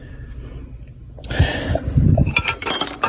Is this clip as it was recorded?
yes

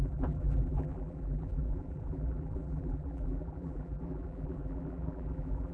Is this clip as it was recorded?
no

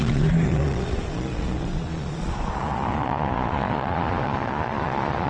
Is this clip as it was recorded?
no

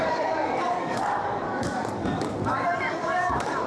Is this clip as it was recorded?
no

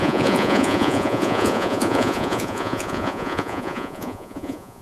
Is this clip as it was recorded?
no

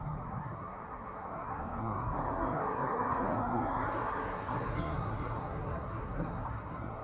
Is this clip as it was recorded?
no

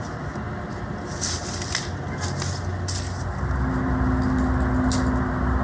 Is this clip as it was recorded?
yes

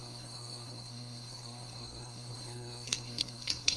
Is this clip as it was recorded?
no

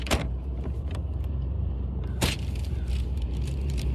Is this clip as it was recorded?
no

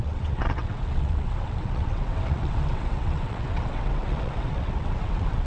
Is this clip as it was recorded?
no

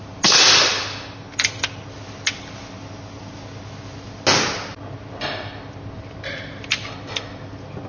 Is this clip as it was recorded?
yes